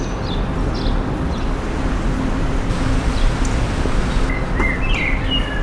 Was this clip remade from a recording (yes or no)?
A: no